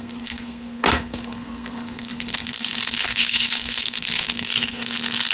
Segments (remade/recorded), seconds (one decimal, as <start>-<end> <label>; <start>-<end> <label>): 0.0-5.3 remade